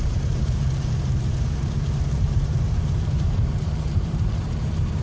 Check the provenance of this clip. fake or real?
fake